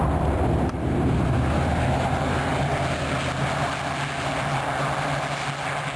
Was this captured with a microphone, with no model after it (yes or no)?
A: yes